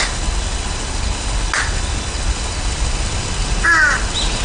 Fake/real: real